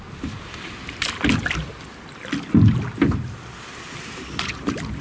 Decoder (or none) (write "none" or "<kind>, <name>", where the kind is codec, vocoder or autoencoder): none